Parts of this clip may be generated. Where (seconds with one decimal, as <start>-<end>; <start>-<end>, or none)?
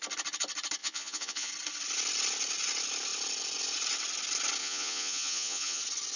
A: 0.8-1.5; 4.6-5.8